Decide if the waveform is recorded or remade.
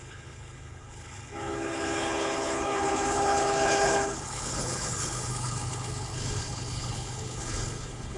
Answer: remade